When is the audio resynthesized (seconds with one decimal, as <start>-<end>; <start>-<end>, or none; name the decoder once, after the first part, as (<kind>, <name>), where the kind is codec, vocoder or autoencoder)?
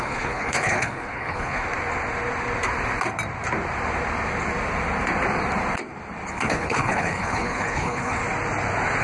0.0-1.6 (codec, HILCodec); 6.3-8.2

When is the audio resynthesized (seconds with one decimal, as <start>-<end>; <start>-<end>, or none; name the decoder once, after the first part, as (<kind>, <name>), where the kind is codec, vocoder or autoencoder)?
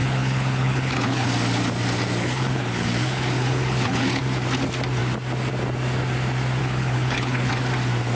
0.0-1.3 (codec, HILCodec); 2.2-4.2; 6.6-7.5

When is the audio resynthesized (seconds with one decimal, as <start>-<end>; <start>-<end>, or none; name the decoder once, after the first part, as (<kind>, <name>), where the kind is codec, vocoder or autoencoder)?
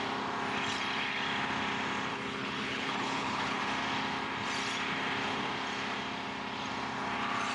2.1-3.6 (codec, HILCodec)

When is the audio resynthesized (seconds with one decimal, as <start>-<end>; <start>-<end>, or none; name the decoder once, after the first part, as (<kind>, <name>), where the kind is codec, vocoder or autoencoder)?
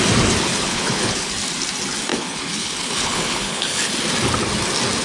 0.5-1.3 (codec, HILCodec); 2.1-3.9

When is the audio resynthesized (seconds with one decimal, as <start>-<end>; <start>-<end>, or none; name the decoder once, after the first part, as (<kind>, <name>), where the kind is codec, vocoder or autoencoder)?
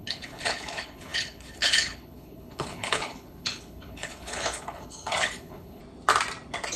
0.0-5.8 (codec, HILCodec)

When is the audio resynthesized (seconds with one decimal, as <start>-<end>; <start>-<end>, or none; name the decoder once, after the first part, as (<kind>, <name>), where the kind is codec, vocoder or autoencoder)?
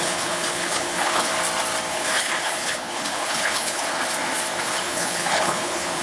0.0-1.3 (codec, HILCodec); 1.9-3.9; 4.6-6.0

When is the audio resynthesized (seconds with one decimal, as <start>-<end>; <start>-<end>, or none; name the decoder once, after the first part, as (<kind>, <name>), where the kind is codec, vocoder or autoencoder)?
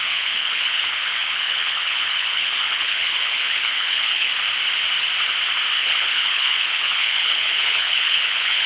0.0-4.3 (codec, HILCodec); 5.7-8.7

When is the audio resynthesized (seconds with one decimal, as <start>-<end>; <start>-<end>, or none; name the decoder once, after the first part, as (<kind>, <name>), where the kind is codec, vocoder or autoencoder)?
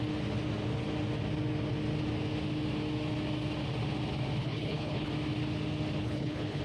4.4-5.1 (codec, HILCodec); 6.0-6.6